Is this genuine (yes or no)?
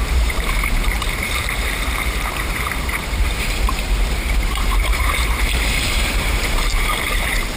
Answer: no